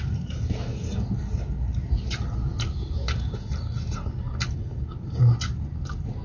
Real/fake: real